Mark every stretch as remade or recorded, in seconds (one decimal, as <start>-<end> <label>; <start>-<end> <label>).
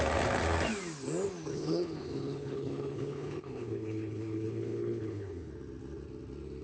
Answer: 0.0-1.5 recorded; 1.5-5.5 remade; 5.5-6.6 recorded